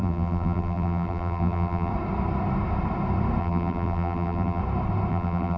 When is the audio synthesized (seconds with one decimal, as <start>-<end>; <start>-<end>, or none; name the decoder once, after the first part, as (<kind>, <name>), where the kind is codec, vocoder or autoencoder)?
0.0-1.9 (vocoder, BigVGAN v2); 3.4-4.6; 5.1-5.6